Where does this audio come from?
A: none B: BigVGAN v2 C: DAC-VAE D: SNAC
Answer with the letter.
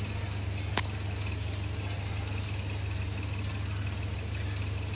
A